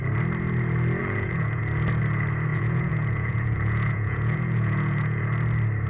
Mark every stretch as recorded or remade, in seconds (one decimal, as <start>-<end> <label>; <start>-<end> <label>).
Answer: 0.0-1.0 recorded; 1.0-1.6 remade; 1.6-2.5 recorded; 2.5-5.2 remade; 5.2-5.9 recorded